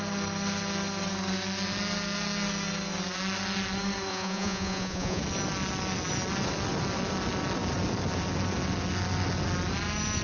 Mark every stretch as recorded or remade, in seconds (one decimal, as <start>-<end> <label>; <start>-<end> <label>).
0.0-4.1 recorded; 4.1-5.2 remade; 5.2-10.2 recorded